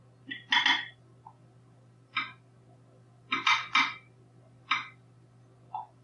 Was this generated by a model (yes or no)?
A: no